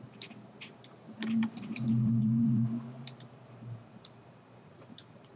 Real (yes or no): no